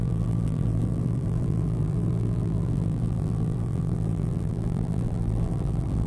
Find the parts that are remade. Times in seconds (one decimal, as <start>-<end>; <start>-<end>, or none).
0.0-6.1

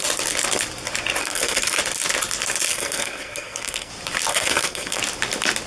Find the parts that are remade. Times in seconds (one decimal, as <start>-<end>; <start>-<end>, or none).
1.2-1.8; 2.7-3.9; 4.3-5.0

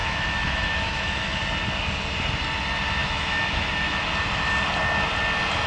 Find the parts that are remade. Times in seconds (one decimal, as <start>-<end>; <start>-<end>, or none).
0.0-1.4; 3.0-4.1

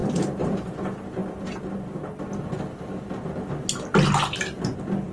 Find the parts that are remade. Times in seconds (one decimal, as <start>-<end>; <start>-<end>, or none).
0.0-0.7; 1.2-3.4

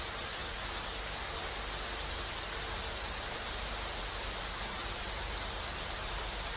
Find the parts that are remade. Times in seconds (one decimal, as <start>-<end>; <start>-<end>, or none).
none

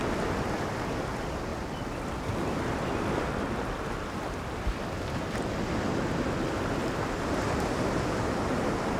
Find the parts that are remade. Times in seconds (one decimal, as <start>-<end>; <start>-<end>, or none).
6.8-9.0

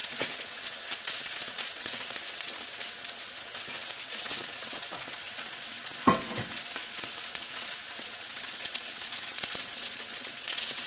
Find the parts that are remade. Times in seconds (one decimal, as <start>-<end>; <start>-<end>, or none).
0.0-10.9

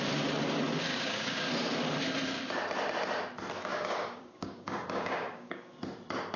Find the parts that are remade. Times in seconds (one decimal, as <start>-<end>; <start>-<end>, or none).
0.9-1.5; 3.7-5.8